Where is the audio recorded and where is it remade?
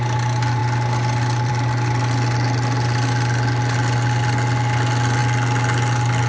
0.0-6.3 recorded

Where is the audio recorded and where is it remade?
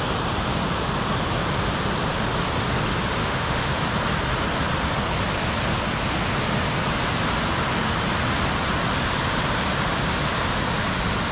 0.0-3.2 recorded; 3.2-3.8 remade; 3.8-11.3 recorded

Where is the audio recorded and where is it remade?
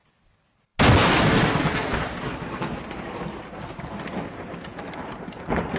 0.0-5.8 recorded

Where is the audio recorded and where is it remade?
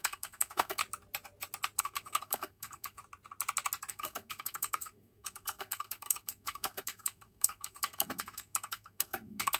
0.0-0.8 remade; 0.8-1.8 recorded; 1.8-3.0 remade; 3.0-3.9 recorded; 3.9-9.6 remade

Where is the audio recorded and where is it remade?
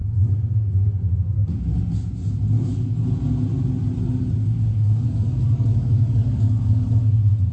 0.0-4.4 recorded; 4.4-7.1 remade; 7.1-7.5 recorded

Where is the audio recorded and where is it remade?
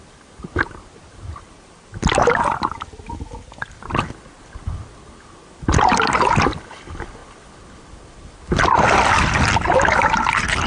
0.0-10.7 recorded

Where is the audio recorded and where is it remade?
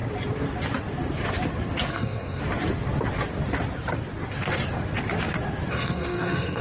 0.0-1.9 recorded; 1.9-2.4 remade; 2.4-5.7 recorded; 5.7-6.6 remade